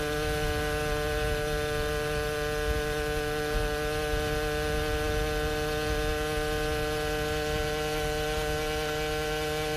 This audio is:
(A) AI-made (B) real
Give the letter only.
B